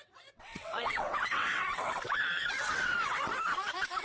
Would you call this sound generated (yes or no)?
yes